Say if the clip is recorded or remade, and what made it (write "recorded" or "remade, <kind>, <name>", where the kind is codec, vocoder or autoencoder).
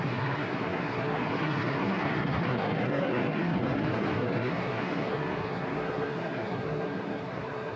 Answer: remade, codec, SNAC